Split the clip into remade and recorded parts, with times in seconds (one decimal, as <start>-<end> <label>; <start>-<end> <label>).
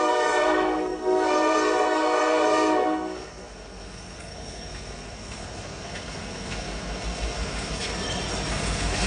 0.0-7.9 remade; 7.9-8.5 recorded; 8.5-9.1 remade